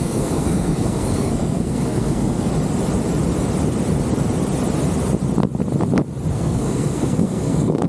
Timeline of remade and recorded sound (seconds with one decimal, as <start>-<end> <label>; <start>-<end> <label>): 0.0-2.5 remade; 2.5-6.3 recorded; 6.3-7.9 remade